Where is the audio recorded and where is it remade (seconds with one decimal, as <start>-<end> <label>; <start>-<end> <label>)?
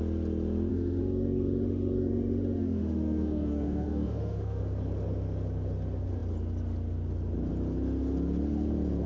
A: 0.0-0.7 recorded; 0.7-4.6 remade; 4.6-9.1 recorded